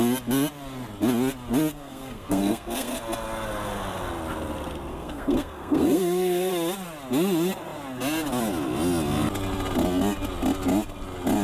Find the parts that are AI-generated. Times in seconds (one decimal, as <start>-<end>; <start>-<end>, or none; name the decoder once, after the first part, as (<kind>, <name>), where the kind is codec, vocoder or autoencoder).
1.7-3.0 (codec, SNAC); 4.9-6.5